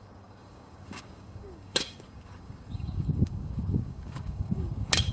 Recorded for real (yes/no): no